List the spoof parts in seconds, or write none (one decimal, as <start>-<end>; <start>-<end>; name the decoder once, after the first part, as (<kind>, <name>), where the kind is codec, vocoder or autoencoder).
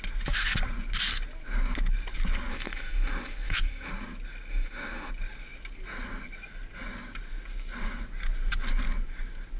2.5-3.9 (autoencoder, DAC-VAE); 4.5-5.1